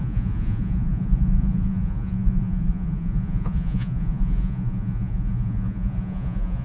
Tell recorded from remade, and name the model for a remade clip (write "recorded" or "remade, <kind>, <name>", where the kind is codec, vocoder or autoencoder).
remade, vocoder, Vocos